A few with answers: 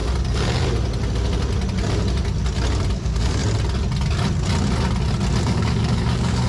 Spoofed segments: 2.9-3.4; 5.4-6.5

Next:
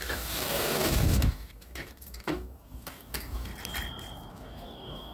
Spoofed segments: 0.0-3.5; 4.3-5.1